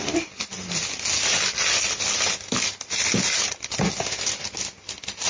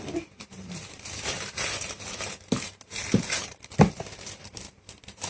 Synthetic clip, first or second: second